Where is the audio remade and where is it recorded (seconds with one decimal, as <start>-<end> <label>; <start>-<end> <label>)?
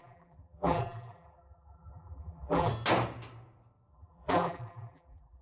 0.0-2.7 remade; 2.7-3.9 recorded; 3.9-5.4 remade